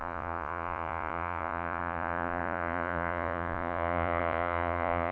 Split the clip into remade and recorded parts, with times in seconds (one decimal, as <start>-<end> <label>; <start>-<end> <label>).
0.0-5.1 remade